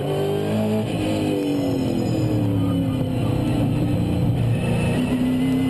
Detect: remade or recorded recorded